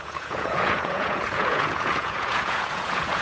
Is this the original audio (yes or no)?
no